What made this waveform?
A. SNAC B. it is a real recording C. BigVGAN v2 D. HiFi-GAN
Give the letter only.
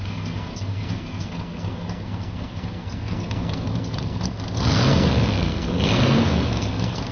A